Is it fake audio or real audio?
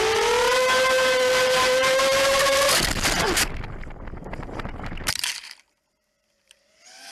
real